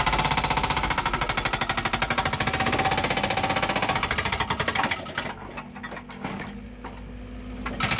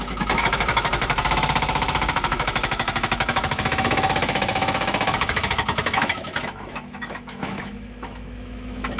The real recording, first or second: first